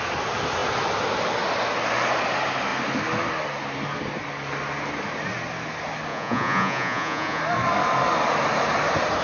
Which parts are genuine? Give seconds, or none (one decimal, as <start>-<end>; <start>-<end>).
0.0-6.1; 7.4-9.2